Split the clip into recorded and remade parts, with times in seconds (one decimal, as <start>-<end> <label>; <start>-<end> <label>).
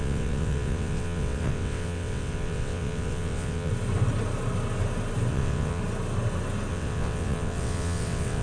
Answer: 0.0-3.7 remade; 3.7-5.3 recorded; 5.3-5.8 remade; 5.8-6.7 recorded; 6.7-8.4 remade